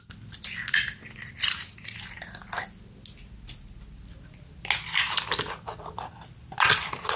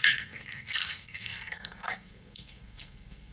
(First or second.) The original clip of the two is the first